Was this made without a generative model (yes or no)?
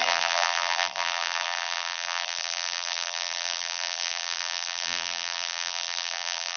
no